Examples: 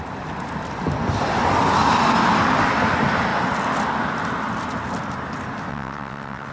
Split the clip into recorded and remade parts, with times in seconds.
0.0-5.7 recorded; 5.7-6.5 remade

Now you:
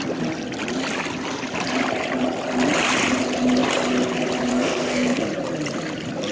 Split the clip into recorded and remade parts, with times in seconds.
0.0-4.5 recorded; 4.5-5.2 remade; 5.2-6.3 recorded